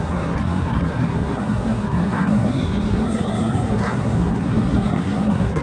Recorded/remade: remade